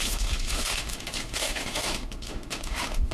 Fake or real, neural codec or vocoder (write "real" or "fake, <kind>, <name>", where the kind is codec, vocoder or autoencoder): fake, autoencoder, DAC-VAE